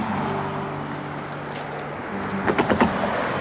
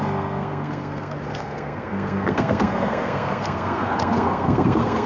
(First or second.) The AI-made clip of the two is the second